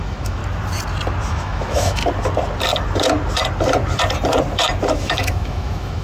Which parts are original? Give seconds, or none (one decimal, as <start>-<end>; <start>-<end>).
0.4-1.3; 2.0-4.9